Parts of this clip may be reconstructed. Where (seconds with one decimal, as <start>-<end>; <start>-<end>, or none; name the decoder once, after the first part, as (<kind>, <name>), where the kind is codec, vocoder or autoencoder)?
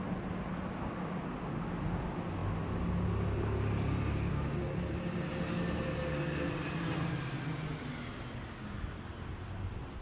none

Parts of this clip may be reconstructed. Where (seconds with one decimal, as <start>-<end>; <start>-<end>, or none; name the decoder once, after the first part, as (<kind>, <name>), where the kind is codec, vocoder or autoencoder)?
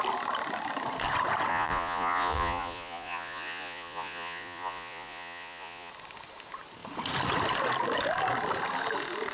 1.5-5.9 (vocoder, Vocos)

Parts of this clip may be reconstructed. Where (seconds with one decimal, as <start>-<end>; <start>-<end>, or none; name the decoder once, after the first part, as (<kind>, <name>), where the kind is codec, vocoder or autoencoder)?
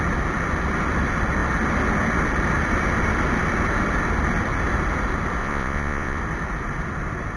5.4-6.2 (vocoder, Vocos)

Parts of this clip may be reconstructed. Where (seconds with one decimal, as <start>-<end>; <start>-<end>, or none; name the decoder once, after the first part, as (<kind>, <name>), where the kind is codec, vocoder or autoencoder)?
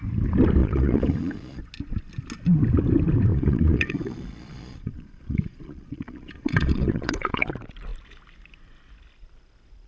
0.6-1.6 (vocoder, Vocos); 3.3-7.5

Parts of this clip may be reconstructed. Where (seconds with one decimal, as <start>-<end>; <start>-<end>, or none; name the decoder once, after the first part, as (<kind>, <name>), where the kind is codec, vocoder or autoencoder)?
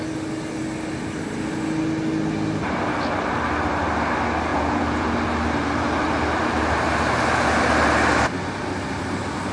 4.5-5.1 (vocoder, Vocos)